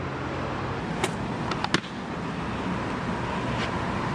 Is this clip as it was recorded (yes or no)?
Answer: yes